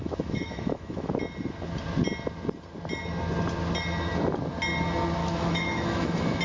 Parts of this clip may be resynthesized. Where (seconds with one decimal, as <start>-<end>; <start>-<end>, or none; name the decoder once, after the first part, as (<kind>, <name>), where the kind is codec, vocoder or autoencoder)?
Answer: 0.0-1.1 (autoencoder, DAC-VAE); 5.2-6.4